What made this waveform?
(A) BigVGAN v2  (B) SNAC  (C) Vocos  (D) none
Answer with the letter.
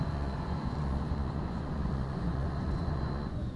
C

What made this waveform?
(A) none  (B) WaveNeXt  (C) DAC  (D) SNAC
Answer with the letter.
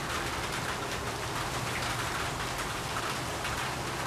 A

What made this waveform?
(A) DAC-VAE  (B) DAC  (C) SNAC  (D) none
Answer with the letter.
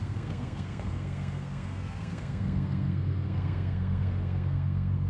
C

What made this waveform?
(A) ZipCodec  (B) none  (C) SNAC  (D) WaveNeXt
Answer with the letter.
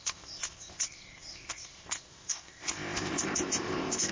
A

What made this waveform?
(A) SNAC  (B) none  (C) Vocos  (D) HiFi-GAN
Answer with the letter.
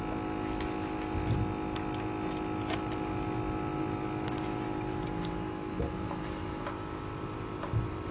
B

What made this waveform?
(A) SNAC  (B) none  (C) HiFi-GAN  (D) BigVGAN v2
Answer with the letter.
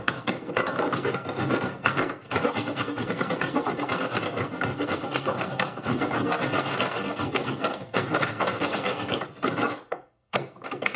A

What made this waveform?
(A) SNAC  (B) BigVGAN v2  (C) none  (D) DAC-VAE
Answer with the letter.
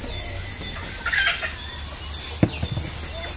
C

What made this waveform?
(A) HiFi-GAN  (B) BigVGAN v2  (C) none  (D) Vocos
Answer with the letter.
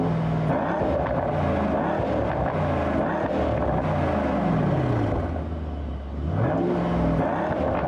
C